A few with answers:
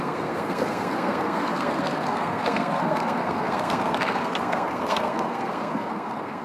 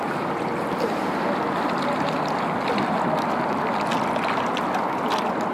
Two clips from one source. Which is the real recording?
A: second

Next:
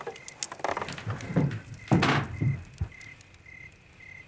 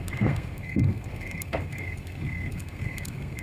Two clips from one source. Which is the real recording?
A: first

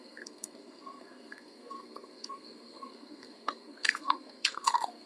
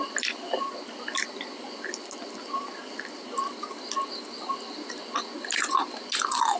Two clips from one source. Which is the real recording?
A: second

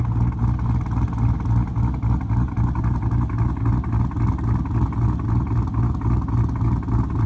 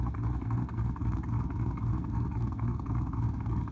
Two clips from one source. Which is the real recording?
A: first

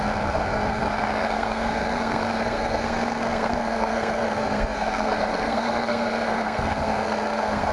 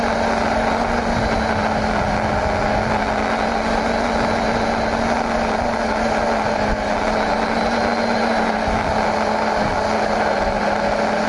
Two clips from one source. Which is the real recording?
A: second